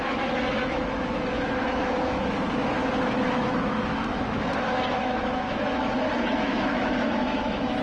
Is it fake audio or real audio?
fake